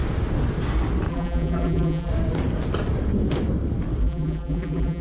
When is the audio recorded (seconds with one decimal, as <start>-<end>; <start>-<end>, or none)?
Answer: 0.0-1.1; 2.1-4.0